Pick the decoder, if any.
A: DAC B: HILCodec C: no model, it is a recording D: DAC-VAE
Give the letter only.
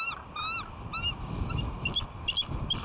C